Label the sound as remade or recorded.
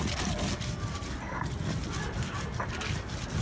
recorded